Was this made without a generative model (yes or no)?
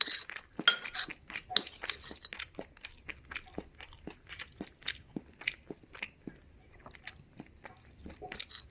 yes